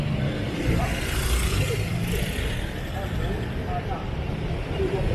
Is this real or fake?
real